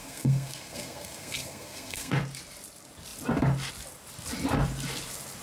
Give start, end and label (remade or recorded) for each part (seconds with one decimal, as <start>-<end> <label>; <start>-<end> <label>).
0.0-2.2 remade; 2.2-5.4 recorded